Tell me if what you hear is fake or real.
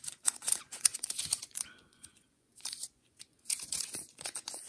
fake